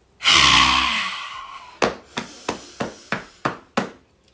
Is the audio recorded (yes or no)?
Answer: yes